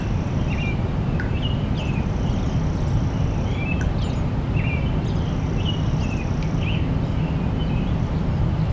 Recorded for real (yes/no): yes